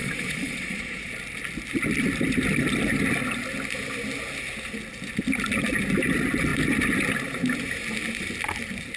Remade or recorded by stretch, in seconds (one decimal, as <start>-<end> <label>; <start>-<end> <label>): 0.0-1.1 remade; 1.1-9.0 recorded